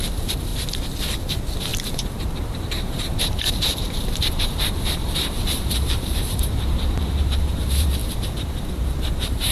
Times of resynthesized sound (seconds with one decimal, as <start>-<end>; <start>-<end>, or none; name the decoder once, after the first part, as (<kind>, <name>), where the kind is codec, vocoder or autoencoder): 0.0-0.5 (vocoder, BigVGAN v2); 1.2-9.5